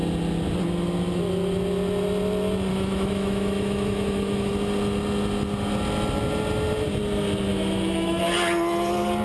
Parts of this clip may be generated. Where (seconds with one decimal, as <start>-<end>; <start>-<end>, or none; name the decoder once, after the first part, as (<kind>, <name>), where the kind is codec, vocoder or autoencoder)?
2.7-4.5 (autoencoder, DAC-VAE); 7.5-8.2